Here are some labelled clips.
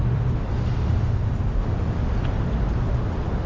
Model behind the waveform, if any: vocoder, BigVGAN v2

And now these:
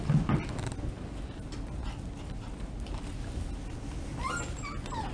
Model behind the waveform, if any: none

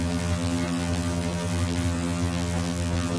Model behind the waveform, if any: vocoder, BigVGAN v2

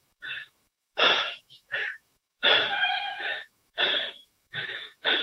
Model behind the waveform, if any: autoencoder, DAC-VAE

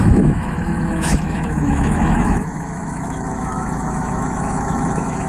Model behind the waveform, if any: autoencoder, DAC-VAE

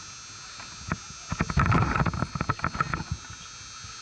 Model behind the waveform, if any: none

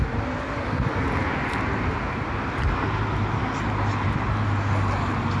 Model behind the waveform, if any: none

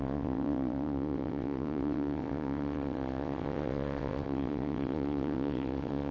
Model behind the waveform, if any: vocoder, WaveNeXt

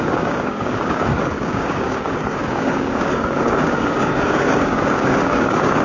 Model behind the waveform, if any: codec, DAC